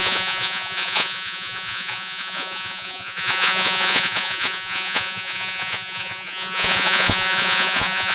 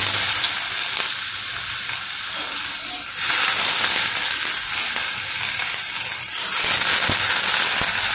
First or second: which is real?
second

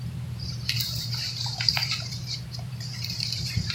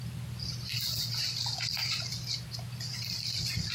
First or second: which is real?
second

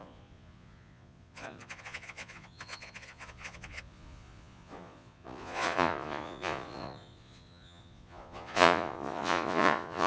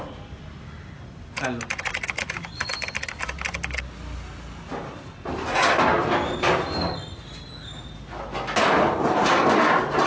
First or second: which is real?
second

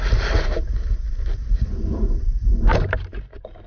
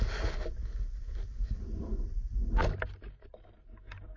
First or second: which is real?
second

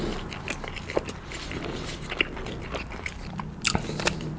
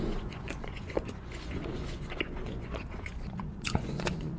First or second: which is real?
first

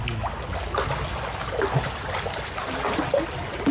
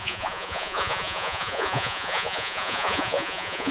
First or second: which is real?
first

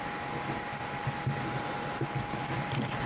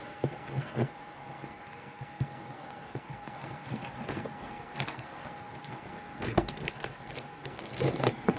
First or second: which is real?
first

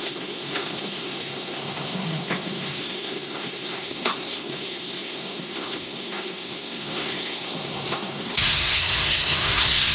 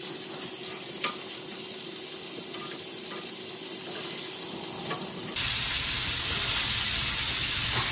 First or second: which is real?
second